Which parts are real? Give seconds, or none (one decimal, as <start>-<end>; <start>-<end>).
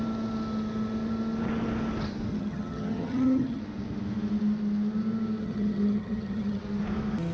0.0-2.3; 3.6-5.4; 6.6-7.3